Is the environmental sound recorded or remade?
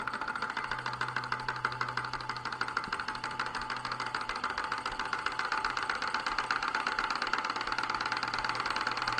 recorded